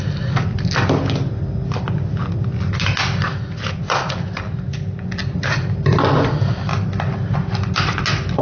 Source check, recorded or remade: recorded